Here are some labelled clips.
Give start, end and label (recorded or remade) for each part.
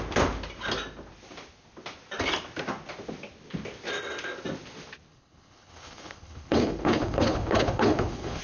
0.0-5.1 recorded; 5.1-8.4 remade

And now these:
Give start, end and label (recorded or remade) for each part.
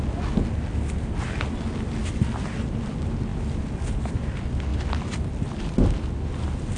0.0-6.8 recorded